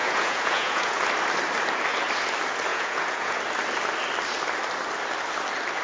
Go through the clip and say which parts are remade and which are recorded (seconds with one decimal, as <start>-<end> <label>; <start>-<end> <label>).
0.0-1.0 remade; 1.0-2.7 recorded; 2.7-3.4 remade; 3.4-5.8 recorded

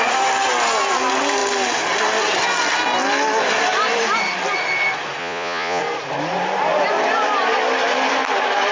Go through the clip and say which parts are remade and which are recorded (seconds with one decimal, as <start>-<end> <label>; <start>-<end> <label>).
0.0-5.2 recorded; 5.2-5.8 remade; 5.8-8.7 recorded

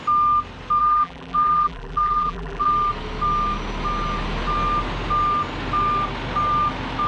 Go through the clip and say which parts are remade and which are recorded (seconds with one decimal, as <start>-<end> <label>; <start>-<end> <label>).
0.0-0.8 recorded; 0.8-2.7 remade; 2.7-7.1 recorded

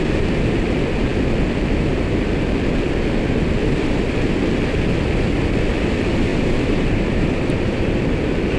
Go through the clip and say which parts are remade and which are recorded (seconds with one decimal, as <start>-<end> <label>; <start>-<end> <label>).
0.0-6.3 recorded; 6.3-8.0 remade; 8.0-8.6 recorded

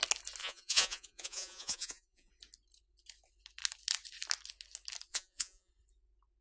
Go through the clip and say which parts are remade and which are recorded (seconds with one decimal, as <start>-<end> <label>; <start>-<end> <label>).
0.0-0.4 recorded; 0.4-2.3 remade; 2.3-5.1 recorded; 5.1-5.7 remade; 5.7-6.4 recorded